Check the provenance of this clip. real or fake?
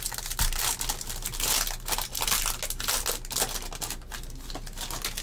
real